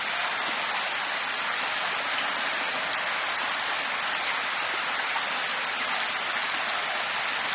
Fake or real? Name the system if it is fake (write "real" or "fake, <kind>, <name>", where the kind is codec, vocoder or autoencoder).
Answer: real